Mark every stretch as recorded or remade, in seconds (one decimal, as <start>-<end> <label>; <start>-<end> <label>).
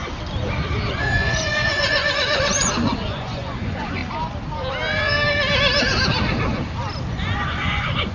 0.0-0.9 recorded; 0.9-4.0 remade; 4.0-7.1 recorded; 7.1-8.1 remade